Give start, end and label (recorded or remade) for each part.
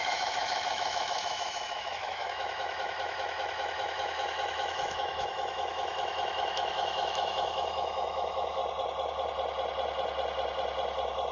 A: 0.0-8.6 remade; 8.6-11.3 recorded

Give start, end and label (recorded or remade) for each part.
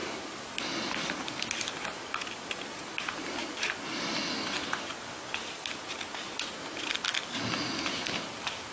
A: 0.0-8.7 recorded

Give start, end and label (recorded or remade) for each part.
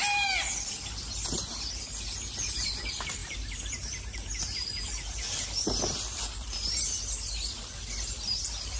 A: 0.0-8.8 recorded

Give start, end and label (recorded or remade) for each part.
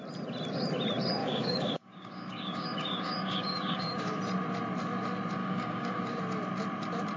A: 0.0-1.2 recorded; 1.2-4.2 remade; 4.2-5.4 recorded; 5.4-6.0 remade; 6.0-7.2 recorded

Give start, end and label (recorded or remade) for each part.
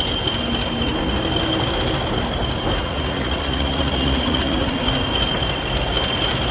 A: 0.0-2.8 recorded; 2.8-4.8 remade; 4.8-6.5 recorded